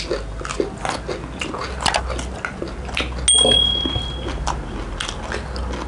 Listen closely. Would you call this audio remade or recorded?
recorded